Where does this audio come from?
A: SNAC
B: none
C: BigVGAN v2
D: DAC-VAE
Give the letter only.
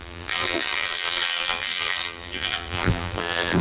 C